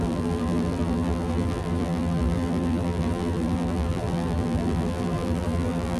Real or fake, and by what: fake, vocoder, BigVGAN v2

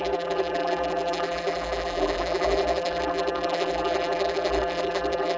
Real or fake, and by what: fake, vocoder, BigVGAN v2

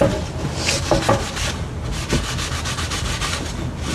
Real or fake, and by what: real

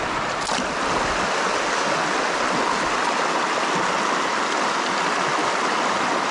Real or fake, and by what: real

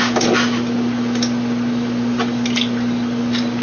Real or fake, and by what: real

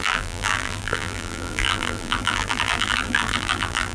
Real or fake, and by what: fake, vocoder, BigVGAN v2